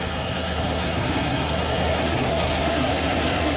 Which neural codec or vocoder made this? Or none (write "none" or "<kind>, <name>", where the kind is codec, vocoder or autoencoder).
codec, SNAC